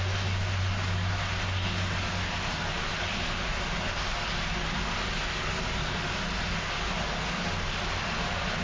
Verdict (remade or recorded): recorded